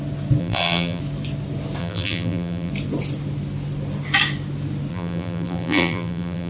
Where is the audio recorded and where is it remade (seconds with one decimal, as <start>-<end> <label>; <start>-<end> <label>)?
0.0-0.4 recorded; 0.4-1.0 remade; 1.0-1.8 recorded; 1.8-2.7 remade; 2.7-4.9 recorded; 4.9-6.5 remade